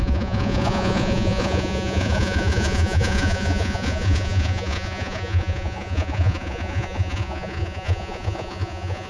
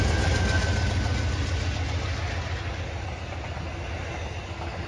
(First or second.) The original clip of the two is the second